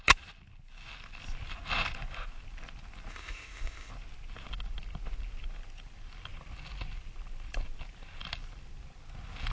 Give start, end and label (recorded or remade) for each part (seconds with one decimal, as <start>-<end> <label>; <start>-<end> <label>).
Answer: 0.0-3.1 recorded; 3.1-3.9 remade; 3.9-9.5 recorded